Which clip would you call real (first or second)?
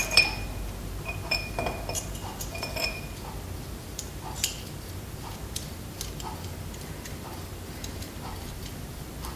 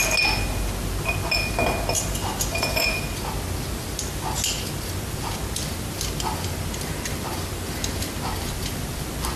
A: second